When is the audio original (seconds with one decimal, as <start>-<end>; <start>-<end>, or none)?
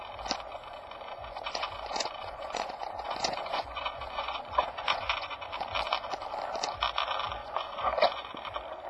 0.0-0.5; 5.5-7.4; 8.3-8.9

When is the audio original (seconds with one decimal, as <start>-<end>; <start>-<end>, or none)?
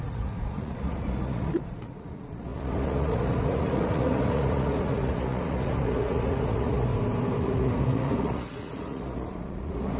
6.9-7.4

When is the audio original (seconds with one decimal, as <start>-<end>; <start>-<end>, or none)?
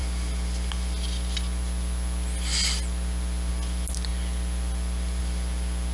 0.0-5.9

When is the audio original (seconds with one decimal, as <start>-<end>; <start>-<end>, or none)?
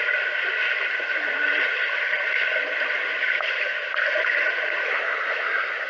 0.0-4.9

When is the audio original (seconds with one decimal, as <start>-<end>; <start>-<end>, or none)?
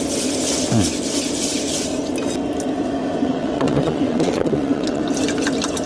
0.0-3.2; 5.0-5.9